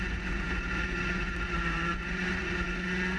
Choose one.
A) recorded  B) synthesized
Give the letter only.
B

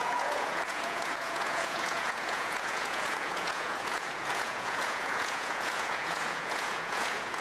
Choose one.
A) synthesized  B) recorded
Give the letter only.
A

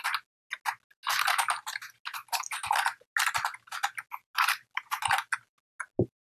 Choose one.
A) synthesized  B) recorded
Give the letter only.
B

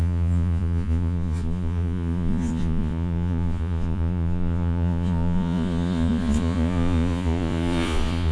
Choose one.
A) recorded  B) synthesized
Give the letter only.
B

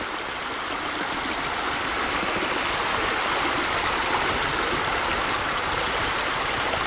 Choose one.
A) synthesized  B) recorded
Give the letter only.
B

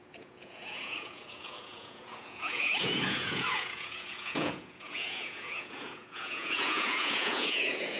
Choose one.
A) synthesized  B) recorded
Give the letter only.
A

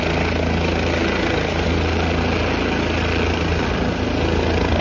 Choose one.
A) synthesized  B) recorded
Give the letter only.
B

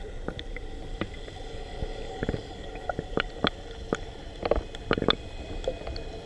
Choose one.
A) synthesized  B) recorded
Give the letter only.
B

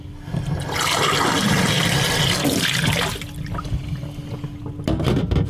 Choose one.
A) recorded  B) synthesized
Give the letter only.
A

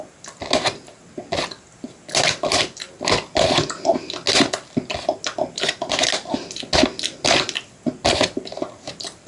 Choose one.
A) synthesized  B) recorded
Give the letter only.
B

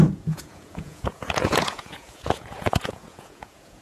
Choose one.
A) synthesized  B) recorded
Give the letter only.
A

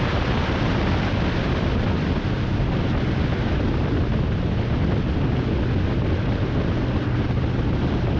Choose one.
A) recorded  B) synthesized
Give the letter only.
A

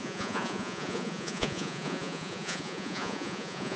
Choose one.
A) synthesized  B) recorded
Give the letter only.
A